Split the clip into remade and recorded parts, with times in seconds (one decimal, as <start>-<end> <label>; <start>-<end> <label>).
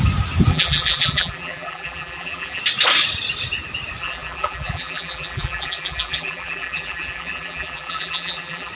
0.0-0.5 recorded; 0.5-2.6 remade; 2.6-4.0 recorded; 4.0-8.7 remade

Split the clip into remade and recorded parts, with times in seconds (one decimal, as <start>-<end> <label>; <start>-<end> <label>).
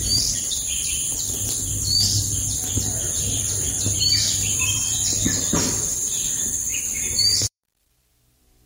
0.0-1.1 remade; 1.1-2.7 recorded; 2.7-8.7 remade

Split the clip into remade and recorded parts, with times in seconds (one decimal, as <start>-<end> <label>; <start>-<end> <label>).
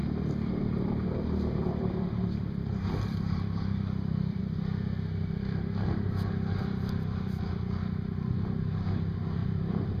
0.0-4.4 remade; 4.4-9.4 recorded; 9.4-10.0 remade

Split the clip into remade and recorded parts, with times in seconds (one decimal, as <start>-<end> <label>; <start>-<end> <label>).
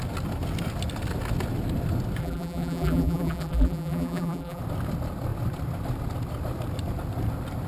0.0-2.2 recorded; 2.2-4.6 remade; 4.6-7.7 recorded